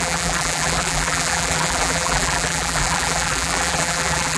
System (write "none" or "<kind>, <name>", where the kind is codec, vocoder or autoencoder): vocoder, BigVGAN v2